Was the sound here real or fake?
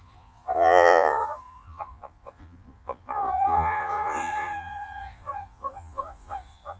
fake